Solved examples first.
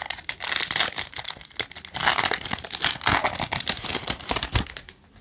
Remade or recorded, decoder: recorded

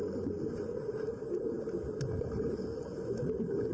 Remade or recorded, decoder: recorded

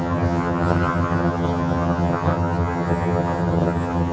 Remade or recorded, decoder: remade, vocoder, HiFi-GAN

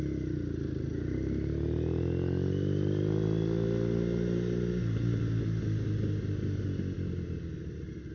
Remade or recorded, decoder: recorded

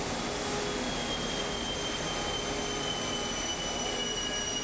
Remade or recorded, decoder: recorded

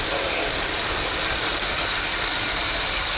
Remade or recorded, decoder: recorded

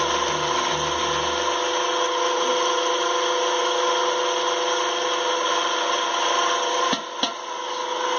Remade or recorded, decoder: recorded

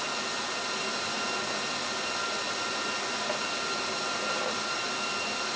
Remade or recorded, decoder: recorded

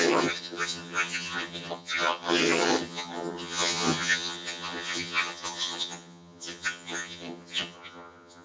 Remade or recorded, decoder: remade, vocoder, HiFi-GAN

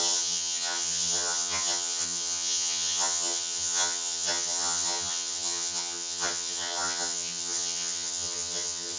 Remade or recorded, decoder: remade, vocoder, HiFi-GAN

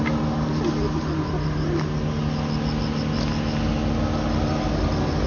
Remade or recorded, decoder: recorded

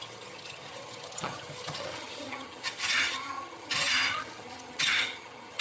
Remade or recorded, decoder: remade, vocoder, HiFi-GAN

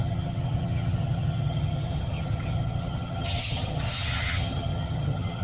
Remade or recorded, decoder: remade, vocoder, HiFi-GAN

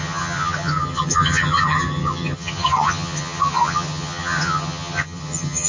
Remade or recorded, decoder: remade, vocoder, HiFi-GAN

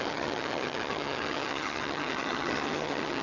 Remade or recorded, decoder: remade, vocoder, HiFi-GAN